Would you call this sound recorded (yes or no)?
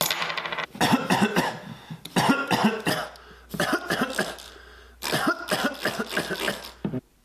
yes